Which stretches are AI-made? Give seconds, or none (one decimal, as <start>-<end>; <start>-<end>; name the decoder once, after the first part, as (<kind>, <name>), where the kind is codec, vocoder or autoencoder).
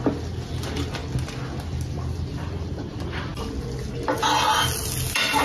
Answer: none